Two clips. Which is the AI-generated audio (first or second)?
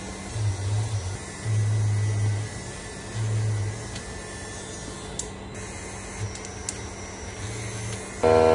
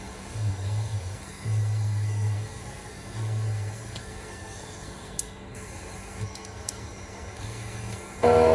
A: second